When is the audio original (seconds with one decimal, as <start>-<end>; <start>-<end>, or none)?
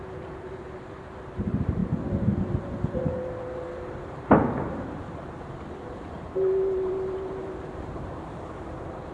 none